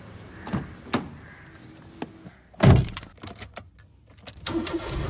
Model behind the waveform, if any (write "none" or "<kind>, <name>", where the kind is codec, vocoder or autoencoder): none